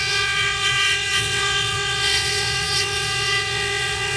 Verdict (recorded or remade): remade